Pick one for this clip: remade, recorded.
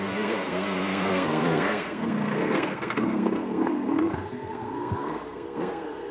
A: remade